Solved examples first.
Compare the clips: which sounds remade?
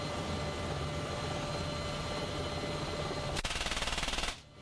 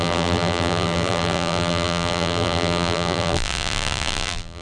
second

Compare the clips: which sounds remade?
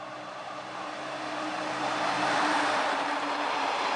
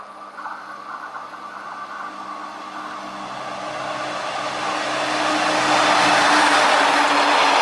first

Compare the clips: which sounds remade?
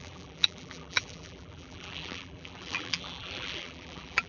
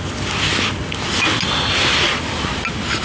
first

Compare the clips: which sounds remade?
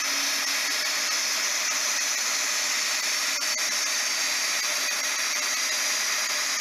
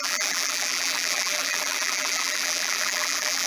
second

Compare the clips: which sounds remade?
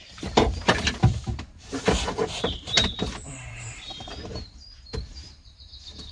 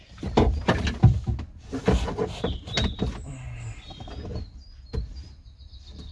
first